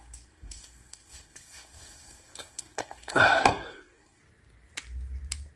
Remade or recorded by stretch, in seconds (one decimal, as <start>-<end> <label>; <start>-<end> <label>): 0.0-4.2 remade; 4.2-5.6 recorded